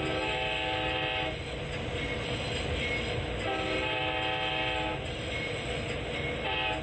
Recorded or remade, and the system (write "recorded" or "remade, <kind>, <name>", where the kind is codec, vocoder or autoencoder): recorded